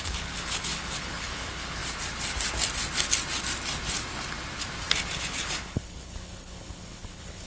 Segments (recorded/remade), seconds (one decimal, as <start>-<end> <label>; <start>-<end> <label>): 0.0-1.8 remade; 1.8-5.2 recorded; 5.2-7.5 remade